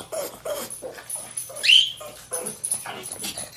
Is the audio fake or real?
real